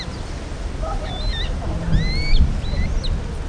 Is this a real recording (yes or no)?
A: yes